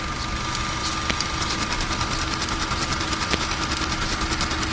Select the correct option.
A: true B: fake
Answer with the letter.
A